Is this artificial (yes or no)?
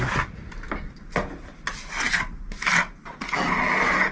no